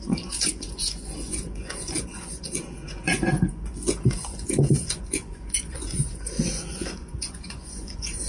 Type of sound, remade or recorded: remade